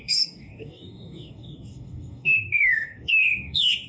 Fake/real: fake